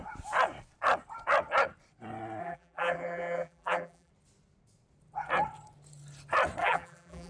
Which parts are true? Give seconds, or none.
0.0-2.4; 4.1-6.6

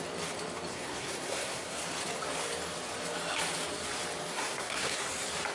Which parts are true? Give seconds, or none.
0.0-0.7; 1.8-4.3; 5.1-5.5